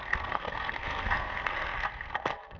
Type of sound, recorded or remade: remade